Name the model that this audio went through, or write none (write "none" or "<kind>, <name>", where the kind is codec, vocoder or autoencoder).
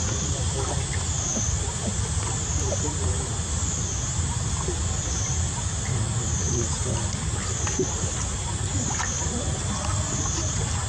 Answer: none